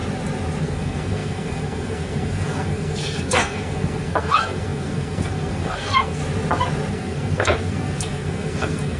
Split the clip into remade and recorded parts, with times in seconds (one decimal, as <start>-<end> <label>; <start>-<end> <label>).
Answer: 0.0-0.6 recorded; 0.6-6.2 remade; 6.2-6.9 recorded; 6.9-9.0 remade